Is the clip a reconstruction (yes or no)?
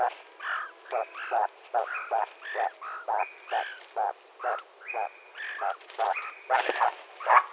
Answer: no